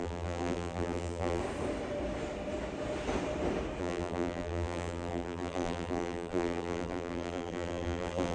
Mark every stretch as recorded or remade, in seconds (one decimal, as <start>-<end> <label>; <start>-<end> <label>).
0.0-1.4 remade; 1.4-3.8 recorded; 3.8-8.3 remade